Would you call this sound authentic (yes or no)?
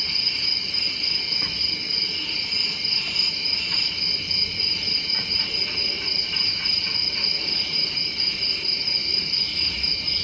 no